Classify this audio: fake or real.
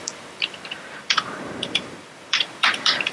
fake